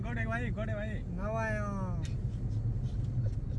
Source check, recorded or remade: recorded